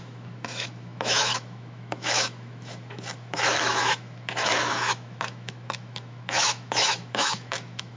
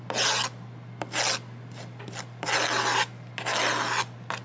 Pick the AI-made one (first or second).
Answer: first